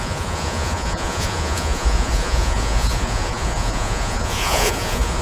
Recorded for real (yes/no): no